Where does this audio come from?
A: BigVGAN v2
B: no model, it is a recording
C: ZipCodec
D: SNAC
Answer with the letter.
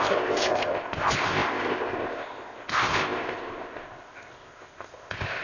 C